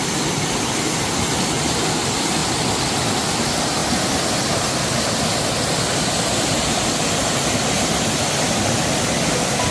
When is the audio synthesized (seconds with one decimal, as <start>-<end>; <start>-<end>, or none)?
none

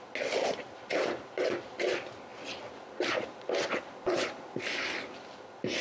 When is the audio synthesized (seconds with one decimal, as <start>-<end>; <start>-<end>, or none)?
none

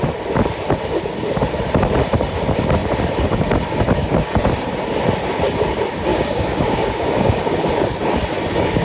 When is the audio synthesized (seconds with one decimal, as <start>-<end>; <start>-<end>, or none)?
6.1-7.6